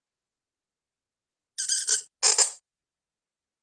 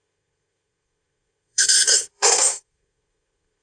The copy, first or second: second